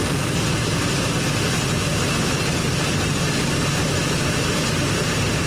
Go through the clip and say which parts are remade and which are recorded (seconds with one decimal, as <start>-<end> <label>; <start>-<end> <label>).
0.0-5.5 recorded